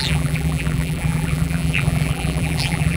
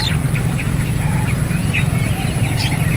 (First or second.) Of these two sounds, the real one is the second